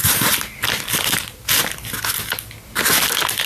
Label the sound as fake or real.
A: real